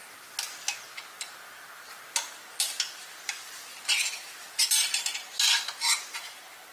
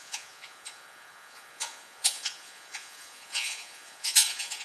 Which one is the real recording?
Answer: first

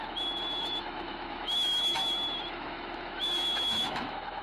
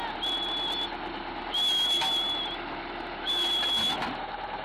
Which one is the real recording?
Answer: second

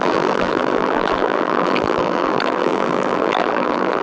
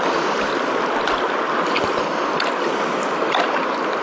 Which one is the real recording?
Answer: second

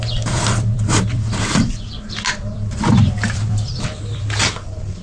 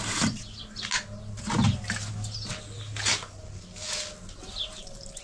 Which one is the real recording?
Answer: second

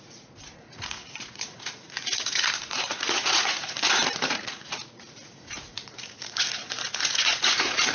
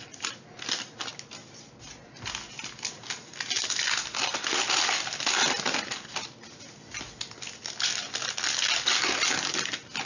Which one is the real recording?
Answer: second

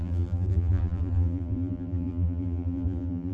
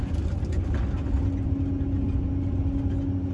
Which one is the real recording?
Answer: second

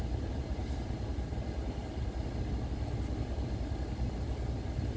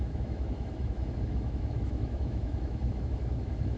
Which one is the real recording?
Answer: first